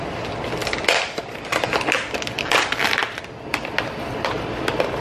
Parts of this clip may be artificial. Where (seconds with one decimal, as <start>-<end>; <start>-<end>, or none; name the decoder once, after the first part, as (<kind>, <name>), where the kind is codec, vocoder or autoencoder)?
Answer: none